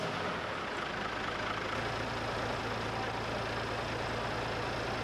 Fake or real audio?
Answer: real